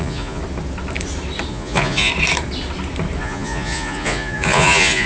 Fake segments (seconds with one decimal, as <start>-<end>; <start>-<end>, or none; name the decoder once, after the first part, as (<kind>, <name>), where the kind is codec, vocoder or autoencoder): 0.0-0.4 (vocoder, Vocos); 1.5-2.1; 3.2-5.1